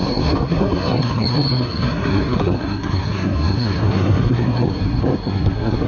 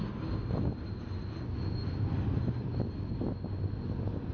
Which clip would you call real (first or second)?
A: second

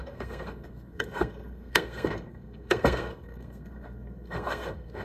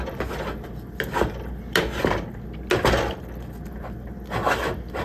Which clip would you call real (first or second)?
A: second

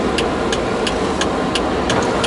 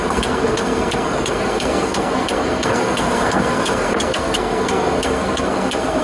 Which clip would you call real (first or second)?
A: first